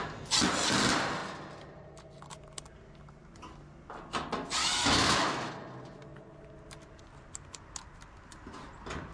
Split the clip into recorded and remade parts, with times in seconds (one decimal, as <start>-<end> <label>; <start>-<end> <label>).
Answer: 0.0-4.6 recorded; 4.6-5.5 remade; 5.5-9.1 recorded